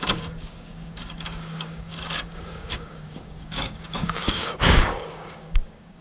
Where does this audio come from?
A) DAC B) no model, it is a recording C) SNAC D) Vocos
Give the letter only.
A